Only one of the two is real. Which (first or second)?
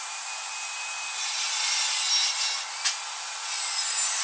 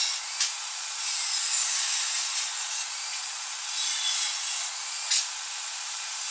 first